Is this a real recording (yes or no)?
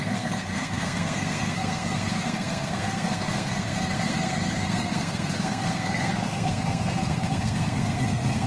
no